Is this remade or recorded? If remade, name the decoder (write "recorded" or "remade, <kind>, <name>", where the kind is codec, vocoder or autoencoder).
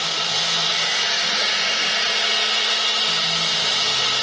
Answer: recorded